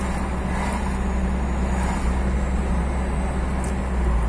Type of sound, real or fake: real